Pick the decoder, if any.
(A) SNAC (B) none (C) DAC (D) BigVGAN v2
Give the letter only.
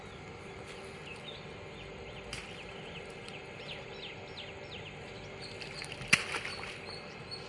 B